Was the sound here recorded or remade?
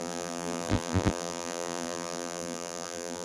remade